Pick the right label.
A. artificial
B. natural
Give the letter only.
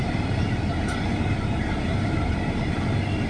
B